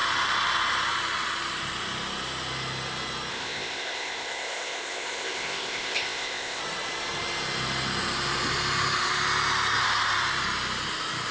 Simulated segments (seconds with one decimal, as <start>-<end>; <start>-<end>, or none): 3.3-6.6